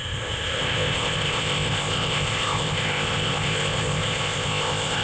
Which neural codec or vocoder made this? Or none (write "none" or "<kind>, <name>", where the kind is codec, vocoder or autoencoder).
codec, ZipCodec